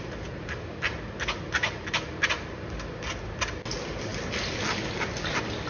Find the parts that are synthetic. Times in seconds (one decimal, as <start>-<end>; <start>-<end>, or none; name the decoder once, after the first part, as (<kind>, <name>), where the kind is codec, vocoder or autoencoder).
none